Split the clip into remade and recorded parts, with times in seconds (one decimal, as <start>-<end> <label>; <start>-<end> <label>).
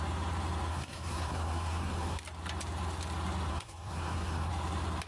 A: 0.0-0.7 recorded; 0.7-2.2 remade; 2.2-3.5 recorded; 3.5-4.5 remade; 4.5-5.1 recorded